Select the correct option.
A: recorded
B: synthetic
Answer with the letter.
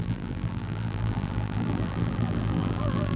B